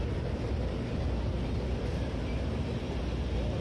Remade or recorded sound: recorded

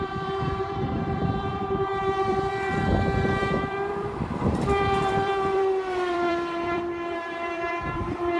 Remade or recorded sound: remade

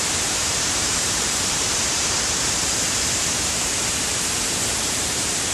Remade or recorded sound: remade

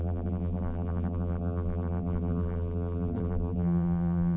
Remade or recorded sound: remade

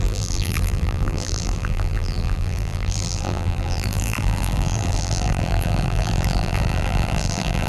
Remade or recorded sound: remade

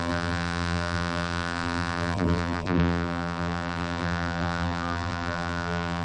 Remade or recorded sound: remade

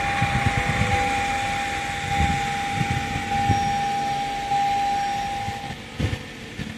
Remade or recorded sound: recorded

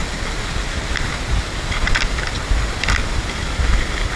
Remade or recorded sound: recorded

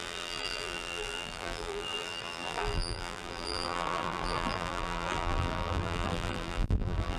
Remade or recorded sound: remade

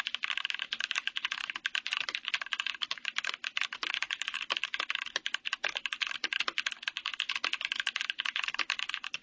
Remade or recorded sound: remade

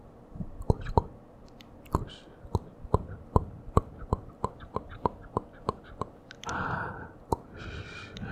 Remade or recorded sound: recorded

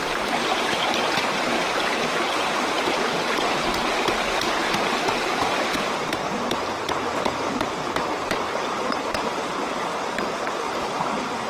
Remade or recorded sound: remade